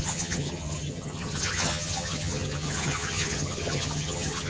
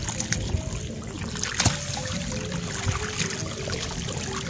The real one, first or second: second